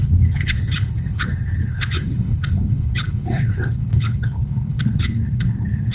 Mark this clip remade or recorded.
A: remade